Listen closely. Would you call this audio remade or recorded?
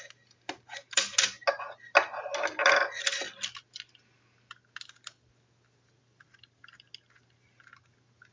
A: recorded